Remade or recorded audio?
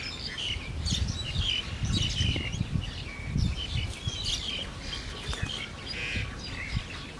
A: recorded